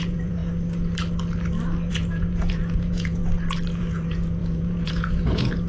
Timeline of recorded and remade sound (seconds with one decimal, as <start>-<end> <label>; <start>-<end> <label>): 0.0-0.4 remade; 0.4-1.9 recorded; 1.9-3.2 remade; 3.2-3.8 recorded; 3.8-5.7 remade